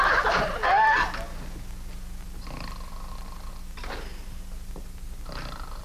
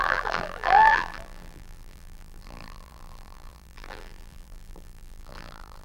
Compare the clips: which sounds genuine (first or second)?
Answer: first